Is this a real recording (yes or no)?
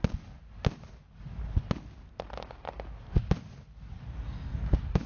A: yes